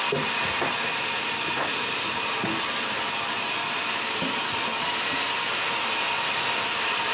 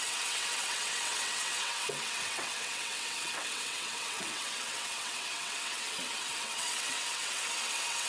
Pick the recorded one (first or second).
first